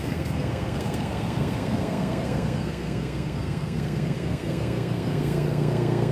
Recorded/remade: remade